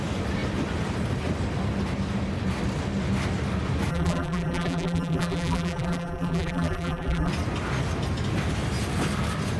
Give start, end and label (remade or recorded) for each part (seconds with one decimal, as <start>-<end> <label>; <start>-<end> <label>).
0.0-3.9 recorded; 3.9-7.3 remade; 7.3-9.6 recorded